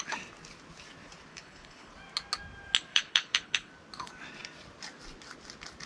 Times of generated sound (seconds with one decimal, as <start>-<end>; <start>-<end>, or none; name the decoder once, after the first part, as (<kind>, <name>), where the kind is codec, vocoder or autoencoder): 1.3-1.9 (codec, HILCodec); 2.9-3.7